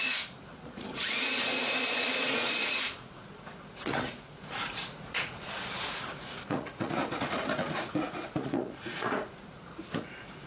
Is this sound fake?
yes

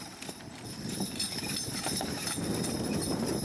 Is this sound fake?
yes